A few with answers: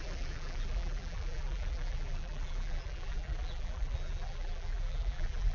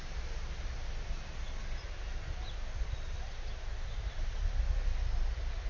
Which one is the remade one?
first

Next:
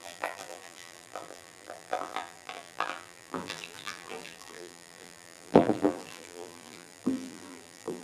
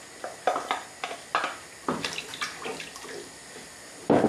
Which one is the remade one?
first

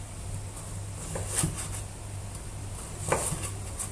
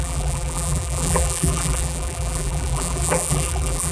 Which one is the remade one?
second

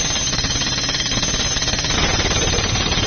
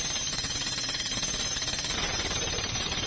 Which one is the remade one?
second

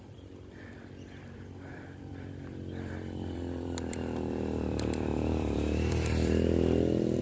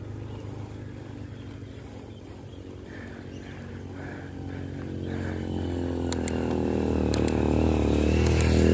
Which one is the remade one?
first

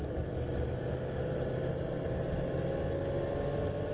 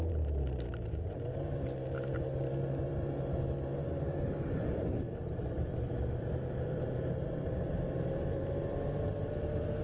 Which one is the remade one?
second